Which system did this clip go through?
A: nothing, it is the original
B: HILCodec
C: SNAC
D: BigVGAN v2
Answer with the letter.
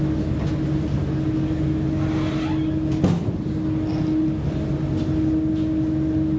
A